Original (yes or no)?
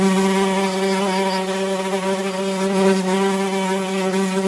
yes